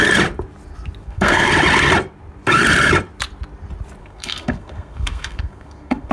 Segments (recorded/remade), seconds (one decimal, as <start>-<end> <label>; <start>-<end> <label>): 0.0-1.0 recorded; 1.0-1.5 remade; 1.5-4.0 recorded; 4.0-6.1 remade